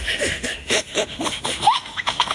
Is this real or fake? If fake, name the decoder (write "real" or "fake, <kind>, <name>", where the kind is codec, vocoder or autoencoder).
fake, autoencoder, DAC-VAE